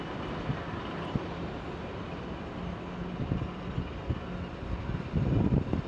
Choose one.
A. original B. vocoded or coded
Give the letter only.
A